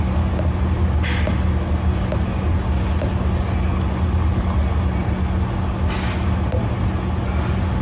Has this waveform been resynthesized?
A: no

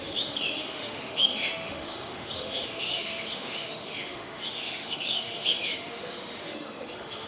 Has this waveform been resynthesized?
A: yes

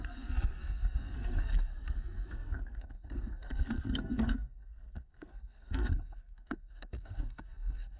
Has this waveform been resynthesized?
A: yes